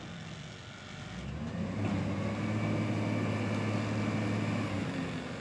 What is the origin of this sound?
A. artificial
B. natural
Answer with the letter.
B